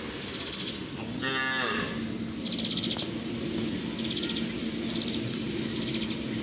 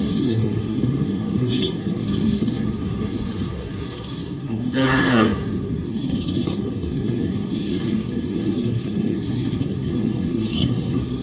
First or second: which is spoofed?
second